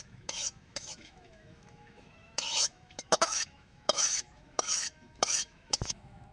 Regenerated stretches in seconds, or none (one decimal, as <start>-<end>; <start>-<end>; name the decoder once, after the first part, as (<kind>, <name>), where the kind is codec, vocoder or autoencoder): 0.0-6.3 (autoencoder, DAC-VAE)